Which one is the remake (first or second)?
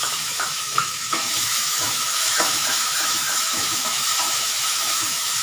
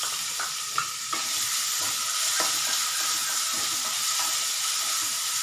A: first